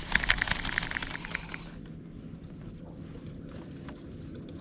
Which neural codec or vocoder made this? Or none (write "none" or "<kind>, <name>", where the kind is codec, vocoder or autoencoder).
none